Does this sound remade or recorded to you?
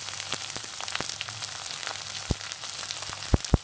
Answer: recorded